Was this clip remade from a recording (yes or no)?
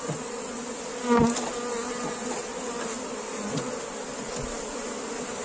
no